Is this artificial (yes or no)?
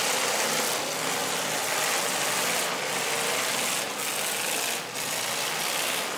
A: no